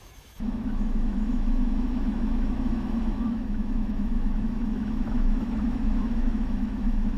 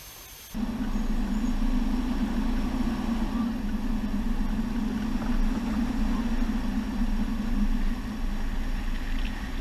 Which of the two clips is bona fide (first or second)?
second